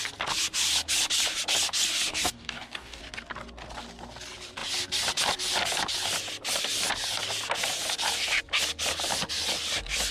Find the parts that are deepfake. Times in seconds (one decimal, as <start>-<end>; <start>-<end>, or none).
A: 2.1-3.0